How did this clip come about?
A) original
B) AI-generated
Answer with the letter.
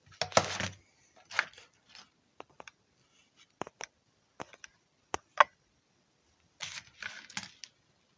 A